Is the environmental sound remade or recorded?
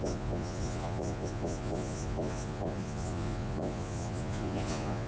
remade